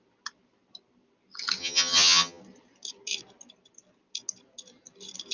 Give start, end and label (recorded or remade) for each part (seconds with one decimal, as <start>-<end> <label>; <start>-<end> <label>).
0.0-1.6 recorded; 1.6-2.4 remade; 2.4-5.3 recorded